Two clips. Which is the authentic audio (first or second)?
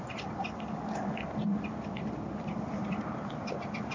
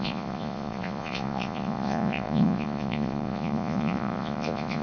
first